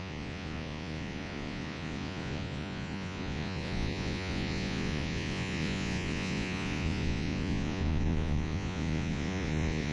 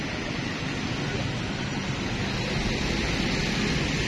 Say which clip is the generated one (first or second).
first